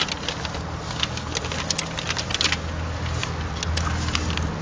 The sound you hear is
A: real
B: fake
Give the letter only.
A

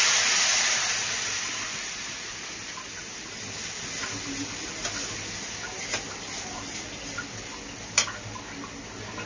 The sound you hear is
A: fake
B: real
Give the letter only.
B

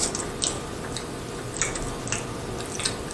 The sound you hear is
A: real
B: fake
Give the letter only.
A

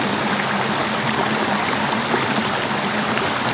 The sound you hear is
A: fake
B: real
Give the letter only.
B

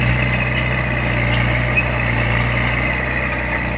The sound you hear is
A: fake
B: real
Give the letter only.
B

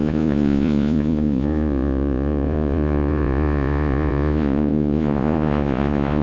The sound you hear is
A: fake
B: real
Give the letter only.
A